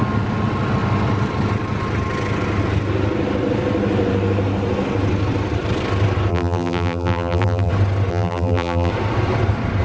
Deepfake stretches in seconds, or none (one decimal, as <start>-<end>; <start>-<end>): 6.3-7.7; 8.1-8.9